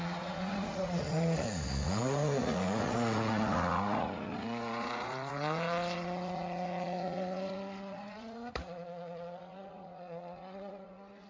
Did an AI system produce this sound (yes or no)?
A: yes